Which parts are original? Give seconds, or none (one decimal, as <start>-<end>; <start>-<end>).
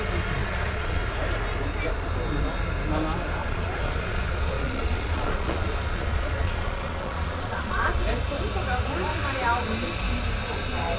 0.0-0.4; 1.0-3.4; 8.0-11.0